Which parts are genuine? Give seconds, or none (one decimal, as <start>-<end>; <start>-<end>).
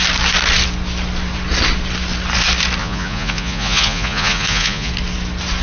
0.0-2.8; 4.9-5.6